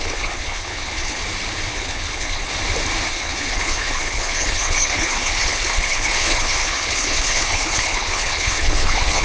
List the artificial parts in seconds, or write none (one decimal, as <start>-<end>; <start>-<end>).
0.0-1.2; 1.7-2.5; 3.1-9.2